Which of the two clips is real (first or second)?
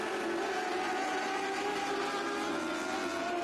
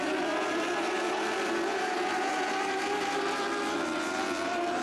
first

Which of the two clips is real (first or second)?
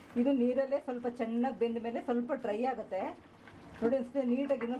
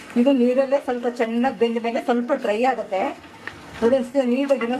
first